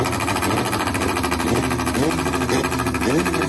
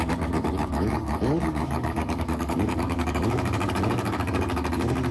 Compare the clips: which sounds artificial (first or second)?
second